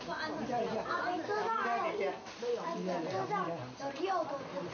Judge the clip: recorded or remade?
recorded